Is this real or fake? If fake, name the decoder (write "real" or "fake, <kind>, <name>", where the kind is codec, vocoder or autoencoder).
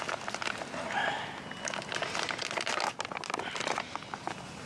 real